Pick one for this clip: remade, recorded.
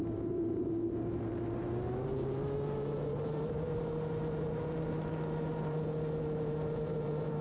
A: remade